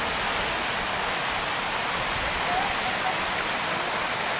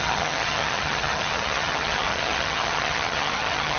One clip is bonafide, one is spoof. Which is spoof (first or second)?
second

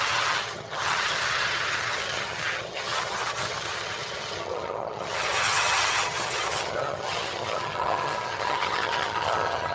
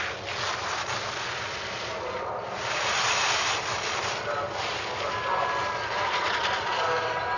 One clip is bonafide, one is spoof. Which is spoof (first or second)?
first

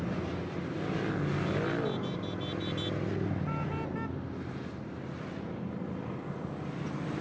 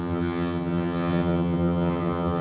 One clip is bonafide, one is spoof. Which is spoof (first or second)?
second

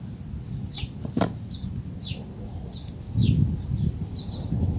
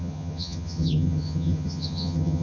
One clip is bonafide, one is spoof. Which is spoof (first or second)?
second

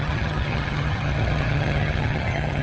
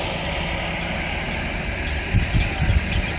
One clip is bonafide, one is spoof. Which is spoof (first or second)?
first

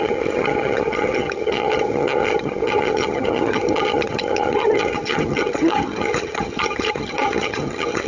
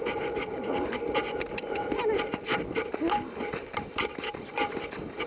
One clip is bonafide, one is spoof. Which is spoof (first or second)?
first